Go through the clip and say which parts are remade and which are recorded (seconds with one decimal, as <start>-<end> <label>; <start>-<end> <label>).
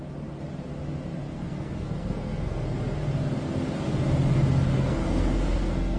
0.0-1.2 recorded; 1.2-3.0 remade; 3.0-4.7 recorded; 4.7-6.0 remade